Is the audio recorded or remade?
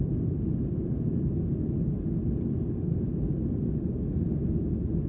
recorded